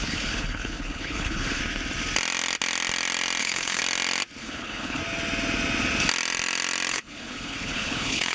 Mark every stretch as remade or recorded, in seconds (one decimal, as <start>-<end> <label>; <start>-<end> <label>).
0.0-1.6 remade; 1.6-3.4 recorded; 3.4-3.8 remade; 3.8-4.4 recorded; 4.4-5.0 remade; 5.0-6.9 recorded; 6.9-8.3 remade